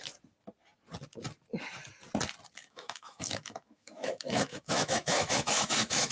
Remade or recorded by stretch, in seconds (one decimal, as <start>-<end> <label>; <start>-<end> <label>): 0.0-2.6 recorded; 2.6-6.1 remade